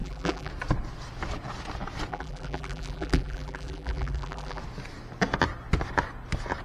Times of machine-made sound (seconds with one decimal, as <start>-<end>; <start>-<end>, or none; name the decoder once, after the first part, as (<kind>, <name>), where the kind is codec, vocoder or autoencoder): 0.0-0.5 (vocoder, BigVGAN v2); 2.1-4.6